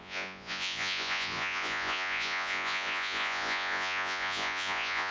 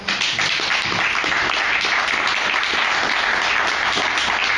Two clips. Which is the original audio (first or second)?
second